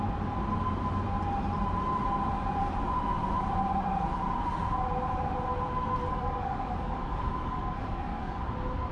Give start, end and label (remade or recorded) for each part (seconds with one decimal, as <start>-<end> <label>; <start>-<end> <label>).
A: 0.0-6.1 recorded; 6.1-8.5 remade; 8.5-8.9 recorded